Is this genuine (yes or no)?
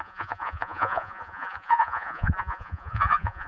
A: no